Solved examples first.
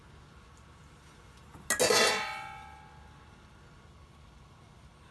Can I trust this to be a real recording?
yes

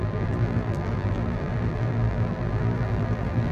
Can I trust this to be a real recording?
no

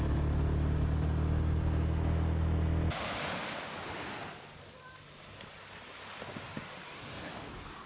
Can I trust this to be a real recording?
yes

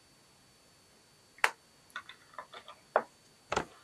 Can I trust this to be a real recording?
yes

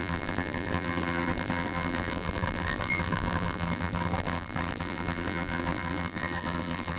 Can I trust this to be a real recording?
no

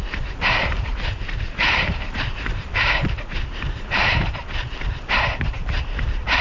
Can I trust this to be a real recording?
no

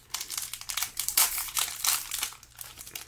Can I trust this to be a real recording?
no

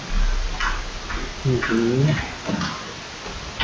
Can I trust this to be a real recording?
yes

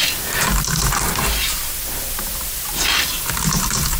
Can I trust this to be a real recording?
no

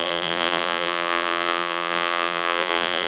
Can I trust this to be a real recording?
no